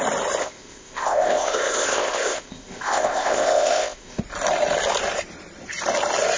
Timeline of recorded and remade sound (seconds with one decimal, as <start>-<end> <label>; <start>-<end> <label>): 0.0-0.4 recorded; 0.4-4.2 remade; 4.2-6.4 recorded